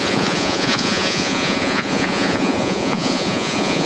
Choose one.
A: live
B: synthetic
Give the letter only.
B